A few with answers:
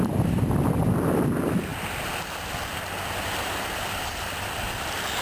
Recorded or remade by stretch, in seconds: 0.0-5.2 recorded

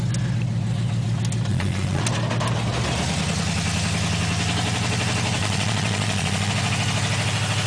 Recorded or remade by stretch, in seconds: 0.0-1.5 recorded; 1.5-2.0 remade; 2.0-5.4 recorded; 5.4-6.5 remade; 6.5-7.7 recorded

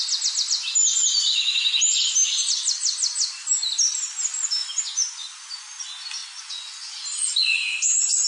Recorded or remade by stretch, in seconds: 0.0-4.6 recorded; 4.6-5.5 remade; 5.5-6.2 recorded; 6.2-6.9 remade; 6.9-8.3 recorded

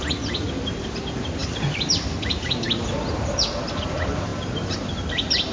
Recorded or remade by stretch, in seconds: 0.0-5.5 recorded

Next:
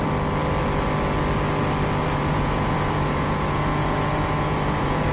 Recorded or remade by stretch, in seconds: 0.0-2.0 recorded; 2.0-5.1 remade